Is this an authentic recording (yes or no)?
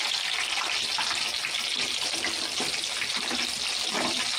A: yes